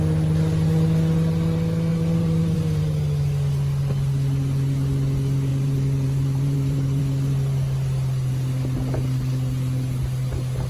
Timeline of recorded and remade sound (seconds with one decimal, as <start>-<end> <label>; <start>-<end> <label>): 0.0-1.9 recorded; 1.9-2.8 remade; 2.8-5.5 recorded; 5.5-7.0 remade; 7.0-10.7 recorded